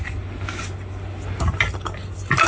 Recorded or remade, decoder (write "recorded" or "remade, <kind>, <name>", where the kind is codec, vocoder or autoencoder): recorded